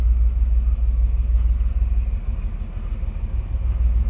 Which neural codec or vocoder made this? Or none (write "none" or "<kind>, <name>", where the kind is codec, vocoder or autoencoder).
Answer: none